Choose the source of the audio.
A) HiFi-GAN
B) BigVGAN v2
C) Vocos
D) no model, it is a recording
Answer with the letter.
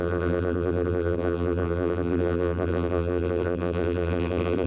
B